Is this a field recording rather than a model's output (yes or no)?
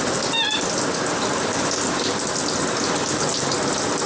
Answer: yes